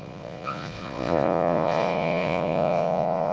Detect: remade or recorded remade